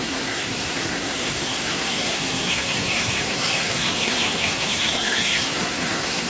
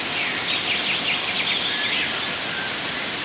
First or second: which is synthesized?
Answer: first